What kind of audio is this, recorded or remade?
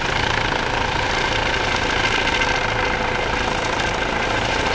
remade